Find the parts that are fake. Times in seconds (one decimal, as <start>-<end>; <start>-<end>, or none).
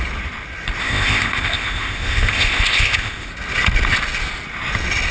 0.8-3.3